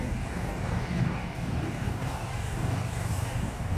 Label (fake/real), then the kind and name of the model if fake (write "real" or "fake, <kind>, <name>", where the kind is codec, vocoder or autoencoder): fake, codec, DAC